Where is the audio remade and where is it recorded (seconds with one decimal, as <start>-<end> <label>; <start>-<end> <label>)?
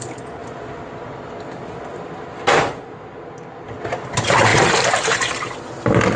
0.0-4.5 recorded; 4.5-5.5 remade; 5.5-6.2 recorded